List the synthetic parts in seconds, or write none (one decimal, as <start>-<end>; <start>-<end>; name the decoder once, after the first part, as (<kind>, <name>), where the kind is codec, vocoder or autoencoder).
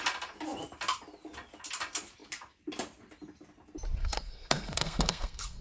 4.0-5.6 (codec, SNAC)